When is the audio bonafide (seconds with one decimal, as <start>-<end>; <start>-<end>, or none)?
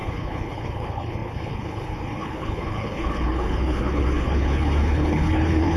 none